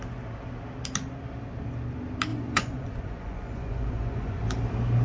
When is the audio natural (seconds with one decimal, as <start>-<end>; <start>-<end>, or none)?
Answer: 0.0-2.3; 4.4-5.0